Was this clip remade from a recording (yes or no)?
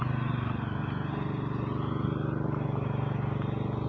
no